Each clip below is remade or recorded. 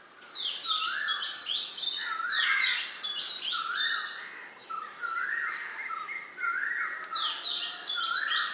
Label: recorded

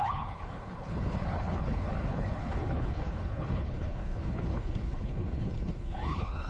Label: remade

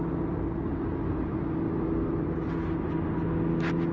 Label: recorded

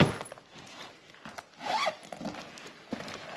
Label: recorded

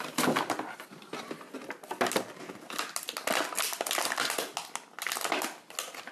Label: recorded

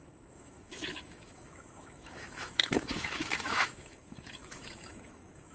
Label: remade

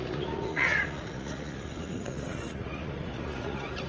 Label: remade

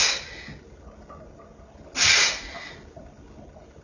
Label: recorded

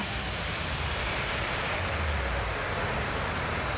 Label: remade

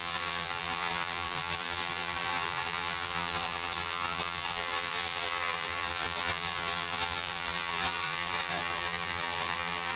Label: remade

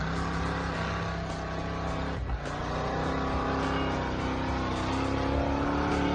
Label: recorded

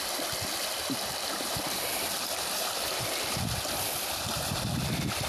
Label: recorded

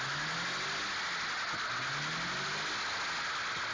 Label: recorded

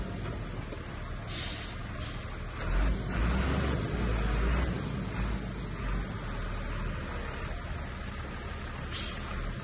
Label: recorded